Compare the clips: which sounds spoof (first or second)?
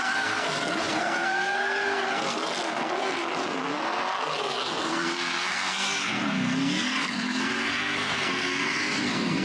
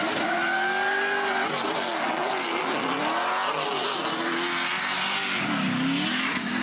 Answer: first